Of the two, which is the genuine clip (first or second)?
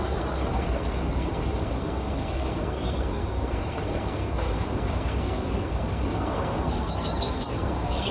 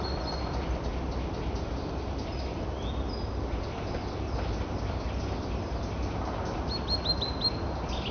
second